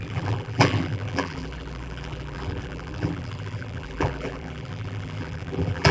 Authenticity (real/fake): fake